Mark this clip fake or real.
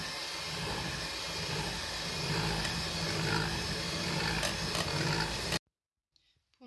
real